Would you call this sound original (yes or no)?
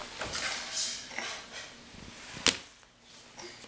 yes